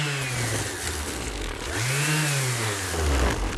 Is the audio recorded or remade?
recorded